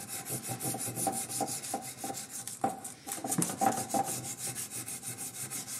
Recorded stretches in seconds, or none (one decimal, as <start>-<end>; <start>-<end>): 0.0-5.8